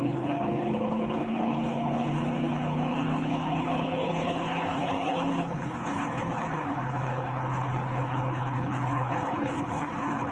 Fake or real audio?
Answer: fake